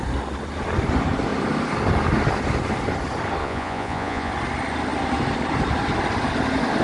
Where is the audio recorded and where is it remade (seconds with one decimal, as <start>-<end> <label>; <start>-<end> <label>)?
0.0-3.4 recorded; 3.4-4.3 remade; 4.3-6.8 recorded